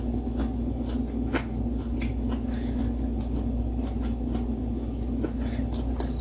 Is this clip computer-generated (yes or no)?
no